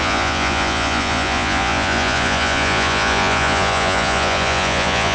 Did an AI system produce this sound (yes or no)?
yes